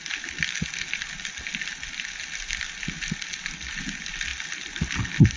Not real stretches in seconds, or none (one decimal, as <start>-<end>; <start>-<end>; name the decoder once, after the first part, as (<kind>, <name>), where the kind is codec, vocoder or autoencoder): none